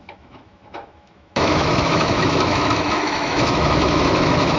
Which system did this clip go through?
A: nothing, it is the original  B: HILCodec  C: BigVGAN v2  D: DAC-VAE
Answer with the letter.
D